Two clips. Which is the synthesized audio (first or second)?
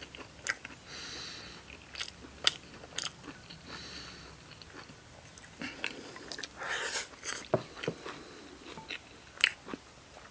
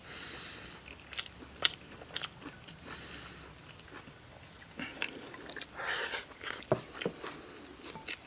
second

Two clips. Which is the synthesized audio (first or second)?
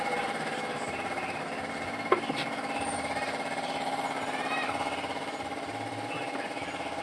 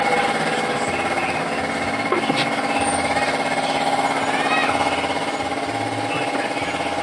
first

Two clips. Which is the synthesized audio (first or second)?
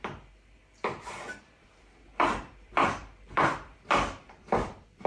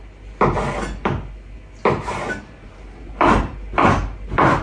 first